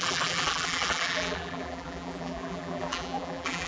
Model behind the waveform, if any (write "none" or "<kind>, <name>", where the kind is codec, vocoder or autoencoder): vocoder, BigVGAN v2